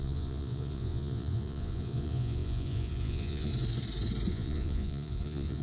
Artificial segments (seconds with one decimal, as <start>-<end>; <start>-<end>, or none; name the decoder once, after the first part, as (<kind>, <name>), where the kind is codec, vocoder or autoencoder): 0.0-3.5 (vocoder, Vocos); 4.3-5.6